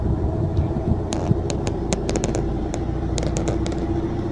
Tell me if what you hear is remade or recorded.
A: remade